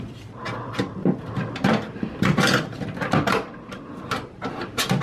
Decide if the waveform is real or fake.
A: real